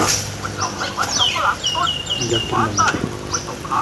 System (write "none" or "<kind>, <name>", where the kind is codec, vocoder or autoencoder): none